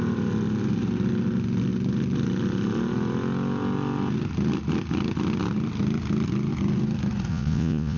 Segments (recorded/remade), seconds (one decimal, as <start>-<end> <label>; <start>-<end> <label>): 0.0-7.3 recorded; 7.3-8.0 remade